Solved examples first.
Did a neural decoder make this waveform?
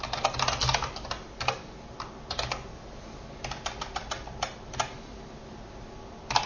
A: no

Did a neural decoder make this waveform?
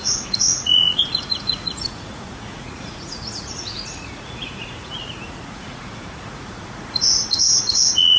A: yes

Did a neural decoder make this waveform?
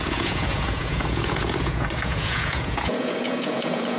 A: yes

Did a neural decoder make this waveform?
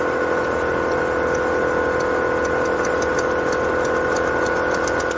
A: no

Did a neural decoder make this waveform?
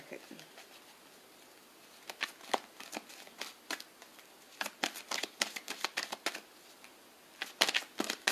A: no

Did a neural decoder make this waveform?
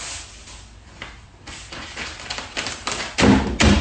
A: no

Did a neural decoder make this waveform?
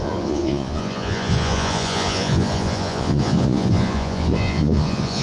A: yes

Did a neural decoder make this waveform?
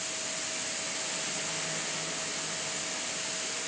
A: no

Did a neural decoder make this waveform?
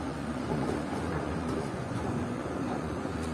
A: yes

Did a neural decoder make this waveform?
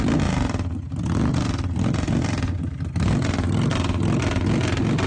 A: no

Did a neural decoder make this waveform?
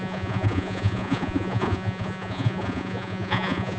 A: yes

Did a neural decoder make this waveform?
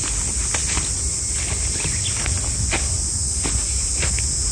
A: no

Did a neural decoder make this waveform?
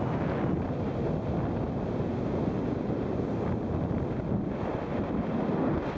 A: no